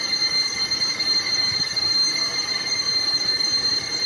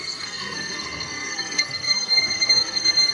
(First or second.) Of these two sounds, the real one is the first